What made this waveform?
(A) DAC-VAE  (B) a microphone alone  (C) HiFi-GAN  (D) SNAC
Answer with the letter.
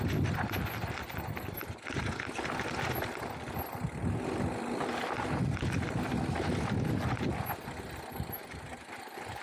B